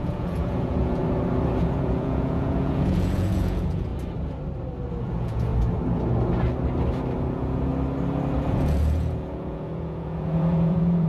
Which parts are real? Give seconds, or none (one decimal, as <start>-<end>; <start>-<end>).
1.0-1.6; 3.9-5.0; 5.5-7.2; 7.7-8.5